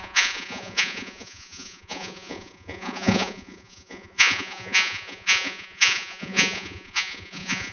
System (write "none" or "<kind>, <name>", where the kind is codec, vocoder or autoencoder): vocoder, Vocos